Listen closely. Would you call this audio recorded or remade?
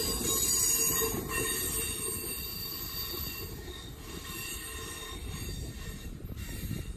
recorded